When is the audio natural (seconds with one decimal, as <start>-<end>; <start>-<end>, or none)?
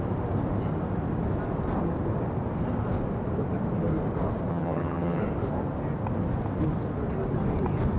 0.0-4.5; 5.2-8.0